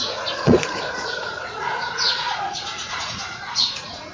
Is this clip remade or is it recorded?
remade